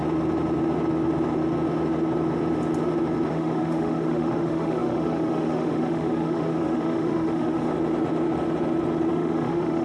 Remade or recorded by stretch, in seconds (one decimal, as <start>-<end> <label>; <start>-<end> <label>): 0.0-3.3 recorded; 3.3-7.7 remade; 7.7-9.1 recorded; 9.1-9.8 remade